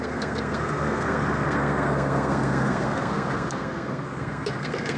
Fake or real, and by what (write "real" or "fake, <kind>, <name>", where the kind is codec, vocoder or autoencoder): fake, codec, SNAC